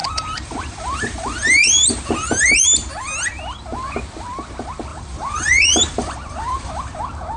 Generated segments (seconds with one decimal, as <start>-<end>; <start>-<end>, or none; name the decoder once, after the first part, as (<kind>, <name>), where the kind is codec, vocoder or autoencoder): 0.0-2.9 (vocoder, BigVGAN v2); 4.9-7.0